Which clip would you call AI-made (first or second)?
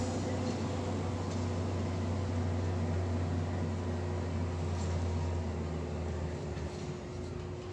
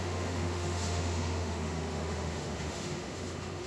second